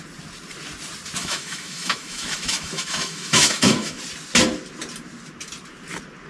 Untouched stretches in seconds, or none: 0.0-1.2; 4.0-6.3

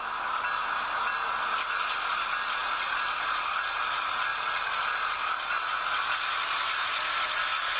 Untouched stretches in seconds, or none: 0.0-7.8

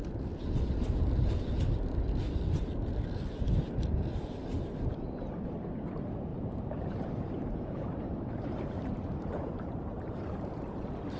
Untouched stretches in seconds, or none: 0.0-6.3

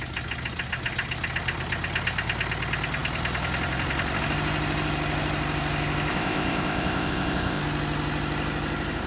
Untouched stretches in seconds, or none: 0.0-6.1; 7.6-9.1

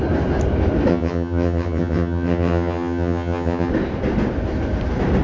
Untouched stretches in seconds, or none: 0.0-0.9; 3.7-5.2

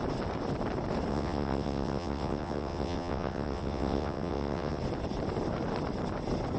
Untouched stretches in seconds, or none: 0.0-1.1; 4.8-6.6

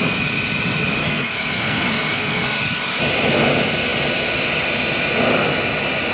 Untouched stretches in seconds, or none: 0.0-1.0; 2.6-6.1

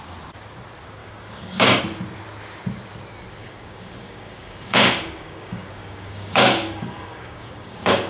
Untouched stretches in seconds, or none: 0.0-1.0; 1.8-3.4